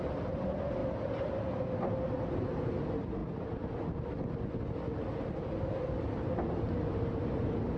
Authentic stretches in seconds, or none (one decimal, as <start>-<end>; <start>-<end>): 0.0-7.8